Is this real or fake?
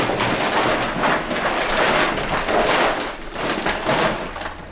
real